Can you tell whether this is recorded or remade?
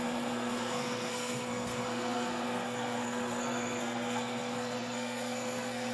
remade